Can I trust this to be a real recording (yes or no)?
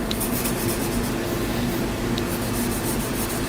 yes